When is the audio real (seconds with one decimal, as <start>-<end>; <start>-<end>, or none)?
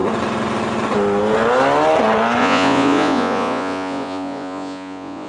0.0-2.4